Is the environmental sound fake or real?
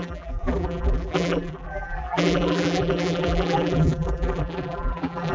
fake